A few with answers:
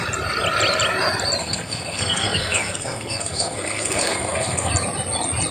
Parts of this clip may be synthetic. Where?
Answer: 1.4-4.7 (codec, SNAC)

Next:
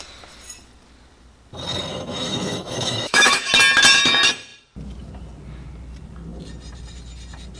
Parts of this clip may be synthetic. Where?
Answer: 1.9-3.5 (autoencoder, DAC-VAE)

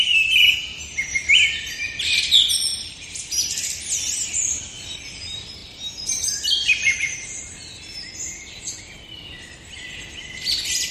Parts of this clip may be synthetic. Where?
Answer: 2.7-3.3 (vocoder, BigVGAN v2); 5.6-8.6

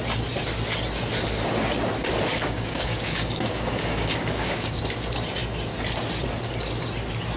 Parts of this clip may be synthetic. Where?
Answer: 2.3-4.8 (codec, DAC)

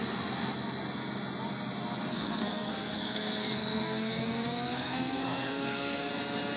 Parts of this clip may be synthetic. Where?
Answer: 2.1-6.1 (codec, SNAC)

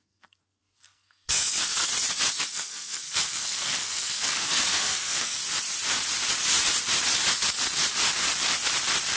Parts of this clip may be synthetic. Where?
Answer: 0.0-1.9 (codec, SNAC); 2.4-5.4

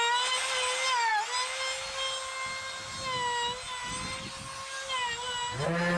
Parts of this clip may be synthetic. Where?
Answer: none